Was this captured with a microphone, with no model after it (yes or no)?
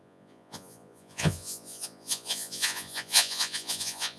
no